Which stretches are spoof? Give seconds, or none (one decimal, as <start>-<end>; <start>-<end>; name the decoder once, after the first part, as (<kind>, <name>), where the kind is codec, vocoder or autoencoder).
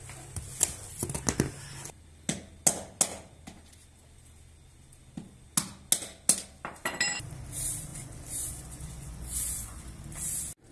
7.9-10.0 (vocoder, Vocos)